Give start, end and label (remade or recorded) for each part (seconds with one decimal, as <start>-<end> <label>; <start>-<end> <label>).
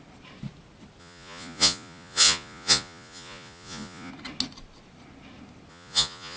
0.0-1.0 recorded; 1.0-4.1 remade; 4.1-5.7 recorded; 5.7-6.4 remade